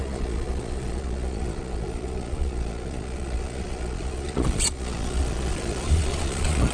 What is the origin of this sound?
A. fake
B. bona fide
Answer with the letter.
A